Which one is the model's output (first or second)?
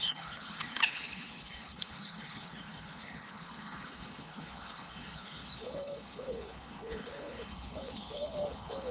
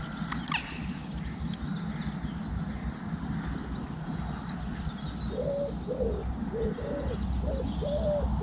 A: first